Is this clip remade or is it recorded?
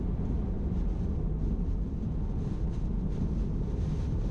recorded